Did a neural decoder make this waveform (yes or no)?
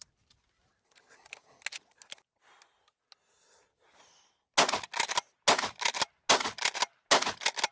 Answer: no